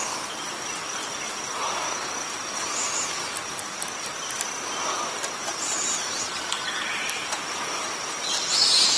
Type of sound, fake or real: real